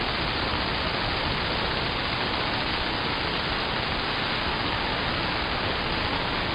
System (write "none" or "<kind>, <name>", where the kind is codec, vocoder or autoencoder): none